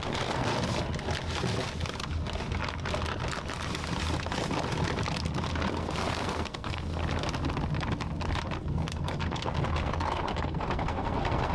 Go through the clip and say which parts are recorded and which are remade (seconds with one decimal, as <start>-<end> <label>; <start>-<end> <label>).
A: 0.0-0.5 remade; 0.5-5.7 recorded; 5.7-7.0 remade; 7.0-8.6 recorded; 8.6-11.5 remade